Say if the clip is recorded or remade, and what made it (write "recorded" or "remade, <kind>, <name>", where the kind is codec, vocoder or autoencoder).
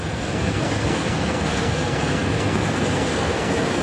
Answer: remade, codec, SNAC